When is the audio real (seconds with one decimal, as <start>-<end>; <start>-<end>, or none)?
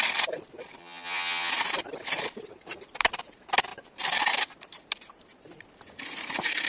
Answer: 0.0-0.8; 1.5-6.7